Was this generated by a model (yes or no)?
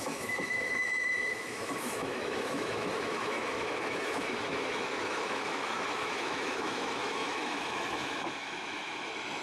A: yes